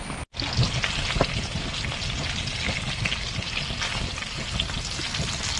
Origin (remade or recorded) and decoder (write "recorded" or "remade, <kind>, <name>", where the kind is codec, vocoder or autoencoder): recorded